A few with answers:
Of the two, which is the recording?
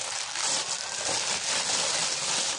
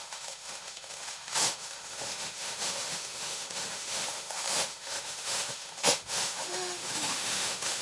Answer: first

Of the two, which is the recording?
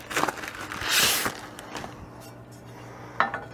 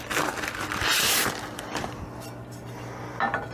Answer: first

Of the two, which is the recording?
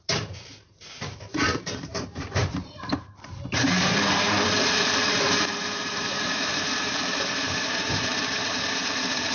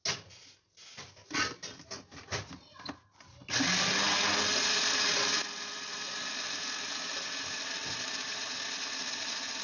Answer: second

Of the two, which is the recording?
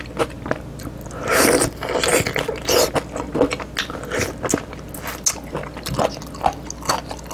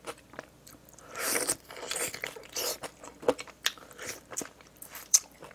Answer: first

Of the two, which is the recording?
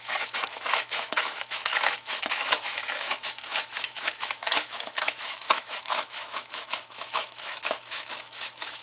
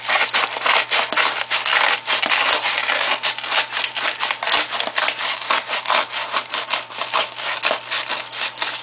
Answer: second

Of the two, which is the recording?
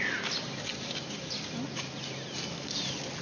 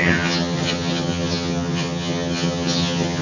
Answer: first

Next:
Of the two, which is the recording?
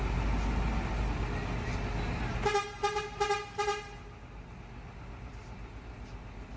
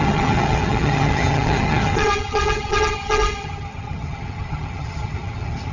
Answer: first